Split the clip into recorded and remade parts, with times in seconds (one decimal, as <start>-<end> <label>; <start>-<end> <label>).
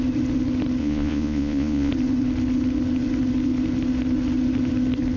0.0-0.8 recorded; 0.8-1.9 remade; 1.9-5.2 recorded